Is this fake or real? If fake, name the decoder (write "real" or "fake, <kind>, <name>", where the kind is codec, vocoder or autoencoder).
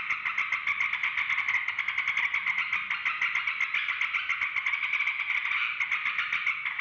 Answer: real